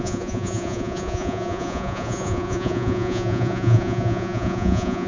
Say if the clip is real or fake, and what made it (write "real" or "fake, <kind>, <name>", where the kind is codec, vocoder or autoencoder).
fake, vocoder, Vocos